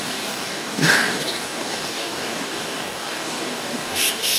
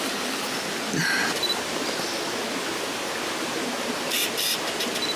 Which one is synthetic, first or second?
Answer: first